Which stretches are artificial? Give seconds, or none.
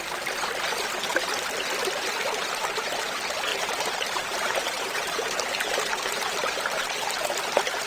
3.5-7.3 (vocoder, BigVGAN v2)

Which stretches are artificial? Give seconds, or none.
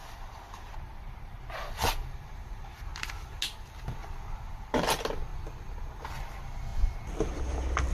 0.0-3.1 (vocoder, BigVGAN v2); 4.0-4.8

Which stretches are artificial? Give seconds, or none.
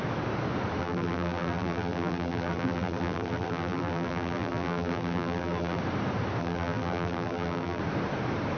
0.8-5.8 (vocoder, BigVGAN v2); 6.4-7.8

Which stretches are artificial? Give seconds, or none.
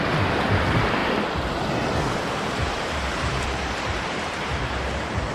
2.6-5.3 (vocoder, BigVGAN v2)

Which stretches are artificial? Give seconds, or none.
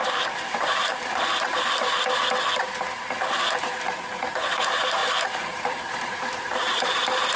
0.0-1.0 (vocoder, BigVGAN v2); 4.3-7.4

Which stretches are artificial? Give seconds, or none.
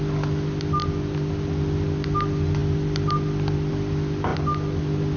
0.8-1.3 (vocoder, BigVGAN v2); 2.6-3.7; 4.3-4.8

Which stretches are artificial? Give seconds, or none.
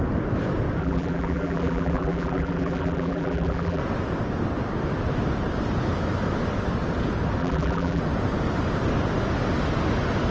0.8-3.8 (vocoder, BigVGAN v2); 7.4-8.0